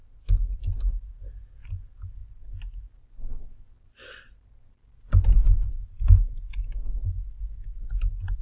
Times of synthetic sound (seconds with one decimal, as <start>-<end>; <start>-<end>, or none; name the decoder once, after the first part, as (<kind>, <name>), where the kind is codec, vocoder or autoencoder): 0.0-0.6 (vocoder, BigVGAN v2); 5.7-6.5